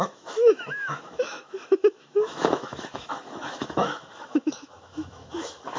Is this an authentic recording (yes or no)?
no